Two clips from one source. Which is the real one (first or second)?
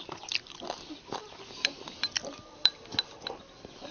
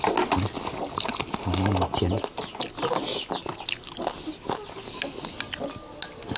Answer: second